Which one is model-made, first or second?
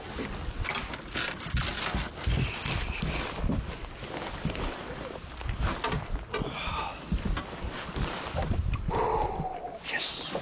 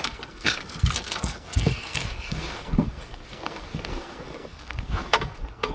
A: second